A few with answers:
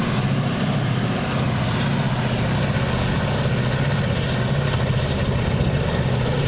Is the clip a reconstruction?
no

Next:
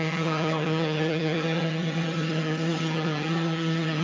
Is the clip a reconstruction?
yes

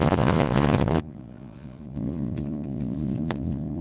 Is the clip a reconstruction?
yes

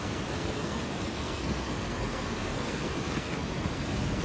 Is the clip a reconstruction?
yes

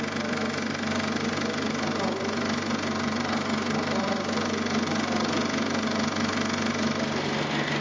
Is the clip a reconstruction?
no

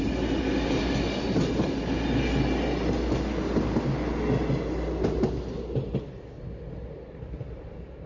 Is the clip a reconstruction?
no